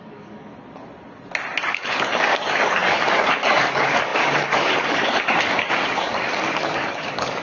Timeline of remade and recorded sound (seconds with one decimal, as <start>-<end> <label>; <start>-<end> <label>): 0.0-0.5 remade; 0.5-1.7 recorded; 1.7-7.4 remade